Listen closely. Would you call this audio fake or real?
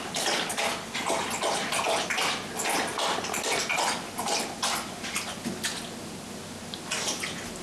real